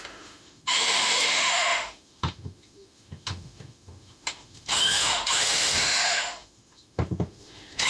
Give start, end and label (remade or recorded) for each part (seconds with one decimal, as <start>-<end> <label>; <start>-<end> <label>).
0.0-7.9 remade

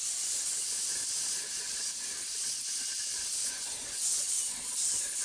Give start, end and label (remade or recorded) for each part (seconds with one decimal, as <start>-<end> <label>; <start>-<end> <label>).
0.0-3.4 recorded; 3.4-4.3 remade; 4.3-5.2 recorded

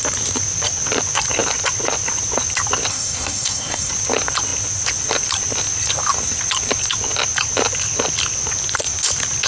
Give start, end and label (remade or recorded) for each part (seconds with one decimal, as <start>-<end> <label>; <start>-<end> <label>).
0.0-2.9 recorded; 2.9-3.9 remade; 3.9-9.5 recorded